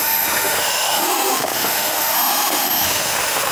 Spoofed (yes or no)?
yes